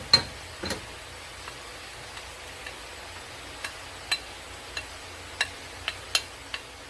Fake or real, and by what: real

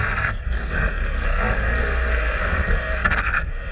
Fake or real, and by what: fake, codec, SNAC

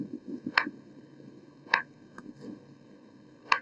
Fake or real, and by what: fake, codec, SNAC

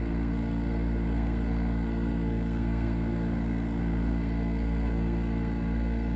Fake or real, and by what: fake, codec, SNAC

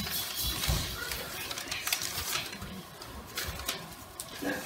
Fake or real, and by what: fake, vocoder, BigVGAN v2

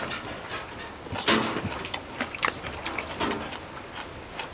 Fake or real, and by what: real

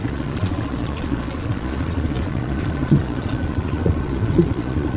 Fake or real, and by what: fake, vocoder, Vocos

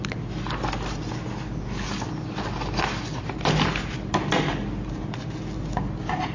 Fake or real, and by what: real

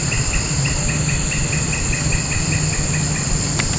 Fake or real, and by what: fake, vocoder, BigVGAN v2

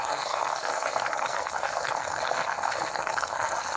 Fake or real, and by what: fake, codec, SNAC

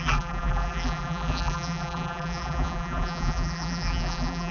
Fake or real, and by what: fake, vocoder, BigVGAN v2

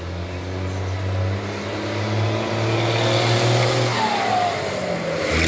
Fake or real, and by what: real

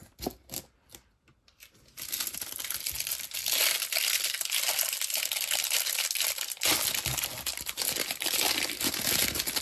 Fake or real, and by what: real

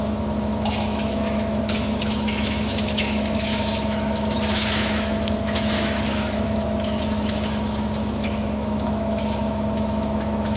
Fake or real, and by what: fake, autoencoder, DAC-VAE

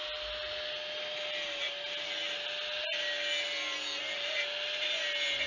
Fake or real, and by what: real